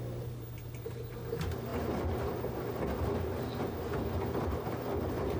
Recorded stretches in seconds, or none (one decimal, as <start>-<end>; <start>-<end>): 0.0-5.4